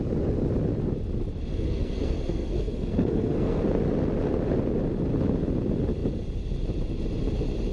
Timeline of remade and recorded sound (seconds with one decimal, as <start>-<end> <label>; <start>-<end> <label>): 0.0-1.5 recorded; 1.5-3.6 remade; 3.6-7.7 recorded